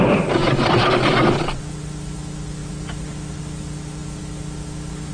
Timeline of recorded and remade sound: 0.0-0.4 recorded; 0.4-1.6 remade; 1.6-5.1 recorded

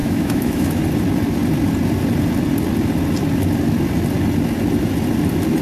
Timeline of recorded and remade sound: 0.0-0.8 remade; 0.8-5.6 recorded

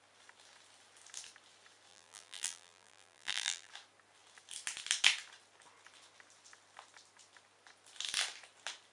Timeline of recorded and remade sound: 0.0-1.9 recorded; 1.9-3.7 remade; 3.7-8.9 recorded

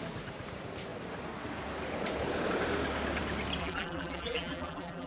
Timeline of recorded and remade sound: 0.0-3.6 recorded; 3.6-5.1 remade

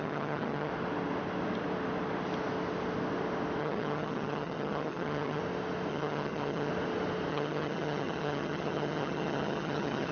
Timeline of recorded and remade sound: 0.0-0.7 remade; 0.7-3.6 recorded; 3.6-5.4 remade; 5.4-5.9 recorded; 5.9-6.7 remade; 6.7-7.3 recorded; 7.3-10.1 remade

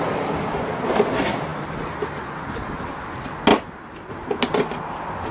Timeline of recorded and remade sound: 0.0-5.3 recorded

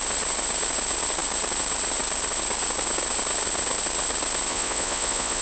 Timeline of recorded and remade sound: 0.0-4.5 recorded; 4.5-5.4 remade